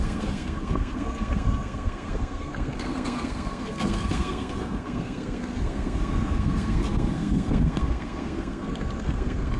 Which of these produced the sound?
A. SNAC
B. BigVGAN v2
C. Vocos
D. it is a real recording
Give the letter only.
A